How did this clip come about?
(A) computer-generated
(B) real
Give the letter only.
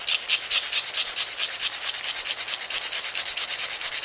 B